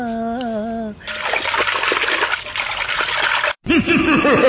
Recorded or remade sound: recorded